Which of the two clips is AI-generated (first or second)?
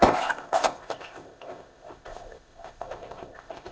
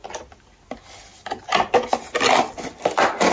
first